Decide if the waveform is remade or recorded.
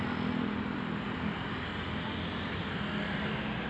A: recorded